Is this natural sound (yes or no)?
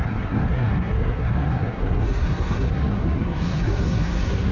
no